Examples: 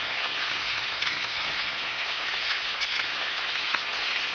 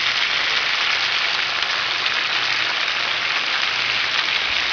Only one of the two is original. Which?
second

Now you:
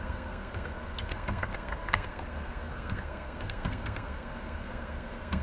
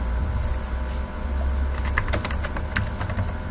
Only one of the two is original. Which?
second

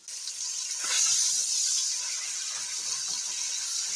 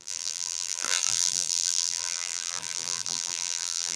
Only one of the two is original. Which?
first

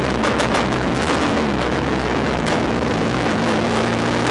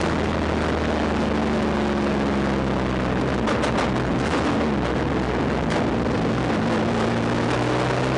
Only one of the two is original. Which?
second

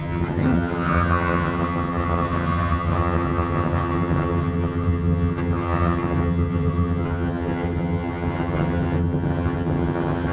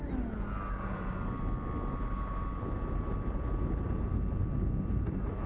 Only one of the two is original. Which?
second